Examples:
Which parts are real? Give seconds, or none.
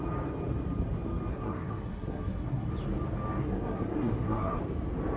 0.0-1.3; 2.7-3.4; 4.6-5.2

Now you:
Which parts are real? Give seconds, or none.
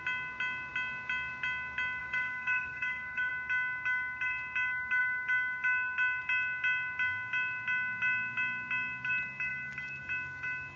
0.0-2.0; 3.3-10.8